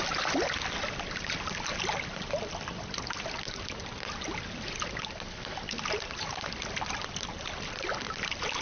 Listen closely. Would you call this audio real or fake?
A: real